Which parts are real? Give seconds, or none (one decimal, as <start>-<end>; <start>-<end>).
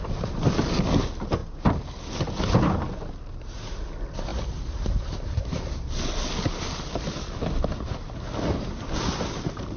0.0-4.3; 6.1-9.8